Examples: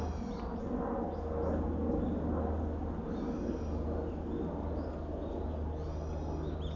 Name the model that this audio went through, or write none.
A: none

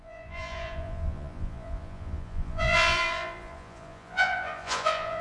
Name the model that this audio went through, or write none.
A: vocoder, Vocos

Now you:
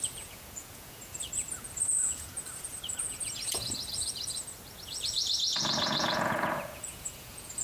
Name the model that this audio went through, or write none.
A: vocoder, Vocos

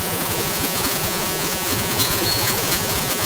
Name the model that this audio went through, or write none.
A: vocoder, Vocos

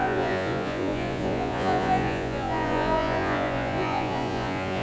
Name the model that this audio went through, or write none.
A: vocoder, Vocos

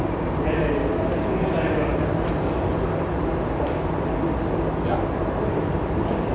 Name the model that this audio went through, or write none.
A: none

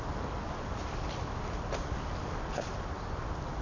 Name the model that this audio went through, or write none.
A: none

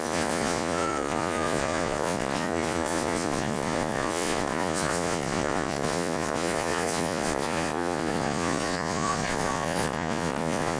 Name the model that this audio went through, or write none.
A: vocoder, Vocos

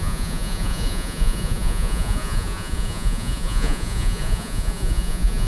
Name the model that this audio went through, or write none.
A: vocoder, Vocos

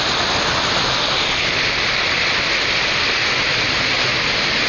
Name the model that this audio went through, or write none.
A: none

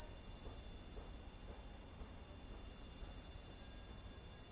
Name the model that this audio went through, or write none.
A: none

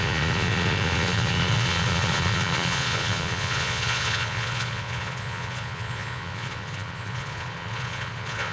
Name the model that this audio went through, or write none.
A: vocoder, Vocos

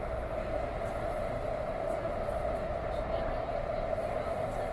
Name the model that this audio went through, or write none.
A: none